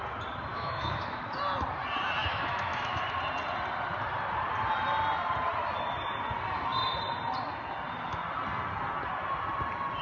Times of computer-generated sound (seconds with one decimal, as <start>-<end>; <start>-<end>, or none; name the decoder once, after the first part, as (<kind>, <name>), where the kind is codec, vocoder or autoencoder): 0.5-1.3 (autoencoder, DAC-VAE); 2.2-3.0